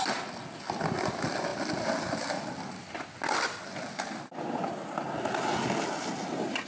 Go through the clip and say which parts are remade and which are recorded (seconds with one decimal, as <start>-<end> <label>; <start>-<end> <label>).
0.0-6.7 recorded